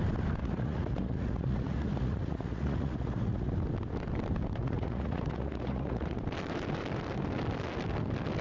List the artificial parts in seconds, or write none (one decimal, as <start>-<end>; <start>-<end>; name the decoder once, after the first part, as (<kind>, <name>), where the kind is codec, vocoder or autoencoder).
0.4-3.5 (vocoder, Vocos); 4.6-6.2